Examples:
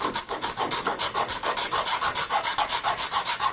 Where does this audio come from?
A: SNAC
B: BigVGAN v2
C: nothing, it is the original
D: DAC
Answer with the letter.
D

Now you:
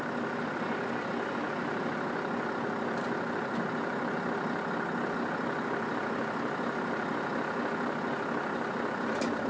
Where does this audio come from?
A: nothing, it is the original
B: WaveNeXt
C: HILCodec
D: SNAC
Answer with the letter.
A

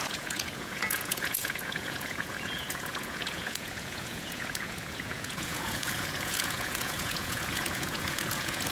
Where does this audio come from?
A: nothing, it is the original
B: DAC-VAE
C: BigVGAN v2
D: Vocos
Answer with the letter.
D